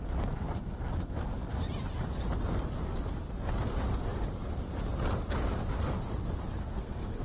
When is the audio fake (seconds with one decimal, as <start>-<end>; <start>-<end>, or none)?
6.6-7.2